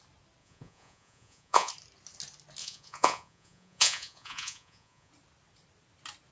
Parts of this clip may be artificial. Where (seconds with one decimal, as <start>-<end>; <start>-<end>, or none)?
0.4-1.7; 2.6-5.1